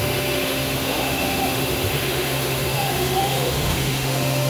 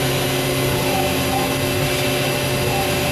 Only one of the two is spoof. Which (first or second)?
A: first